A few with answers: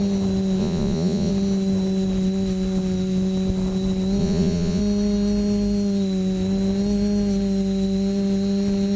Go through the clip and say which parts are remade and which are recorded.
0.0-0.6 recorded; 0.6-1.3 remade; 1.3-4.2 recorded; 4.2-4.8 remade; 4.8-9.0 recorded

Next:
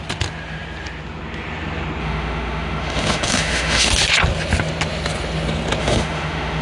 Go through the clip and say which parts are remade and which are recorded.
0.0-2.0 recorded; 2.0-3.9 remade; 3.9-5.8 recorded; 5.8-6.6 remade